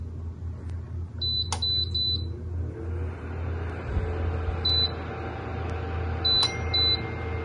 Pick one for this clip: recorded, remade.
recorded